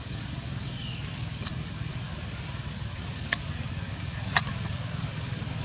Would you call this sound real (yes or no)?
no